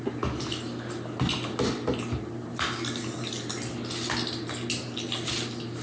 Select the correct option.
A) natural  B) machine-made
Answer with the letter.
A